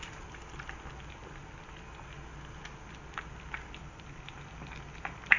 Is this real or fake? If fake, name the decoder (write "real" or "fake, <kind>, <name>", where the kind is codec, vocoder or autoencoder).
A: real